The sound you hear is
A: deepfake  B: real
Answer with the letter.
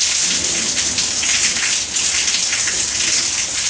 B